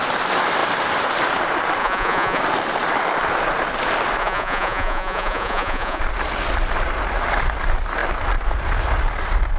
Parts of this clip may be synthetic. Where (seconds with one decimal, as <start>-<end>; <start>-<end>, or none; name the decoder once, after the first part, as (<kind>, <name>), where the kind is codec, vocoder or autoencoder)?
1.8-2.4 (vocoder, Vocos); 4.2-6.0